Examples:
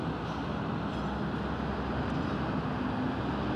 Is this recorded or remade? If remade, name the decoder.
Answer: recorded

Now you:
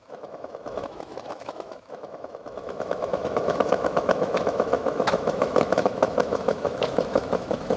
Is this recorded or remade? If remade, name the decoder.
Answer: remade, autoencoder, DAC-VAE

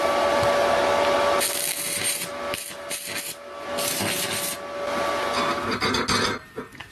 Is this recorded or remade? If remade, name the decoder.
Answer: recorded